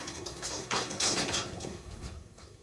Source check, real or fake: fake